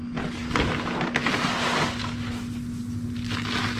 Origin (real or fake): real